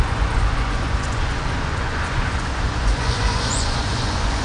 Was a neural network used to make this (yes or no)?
yes